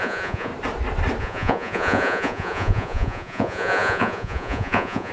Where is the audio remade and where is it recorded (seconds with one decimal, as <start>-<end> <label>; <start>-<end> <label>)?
0.0-0.5 remade; 0.5-1.2 recorded; 1.2-5.1 remade